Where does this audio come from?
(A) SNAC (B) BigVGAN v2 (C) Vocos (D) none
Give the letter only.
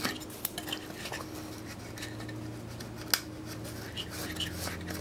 D